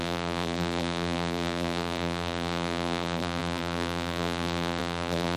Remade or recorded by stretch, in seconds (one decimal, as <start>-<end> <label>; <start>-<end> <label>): 0.0-5.4 remade